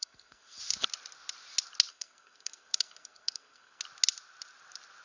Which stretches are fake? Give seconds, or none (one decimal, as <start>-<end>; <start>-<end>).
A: 0.0-0.6; 1.9-3.8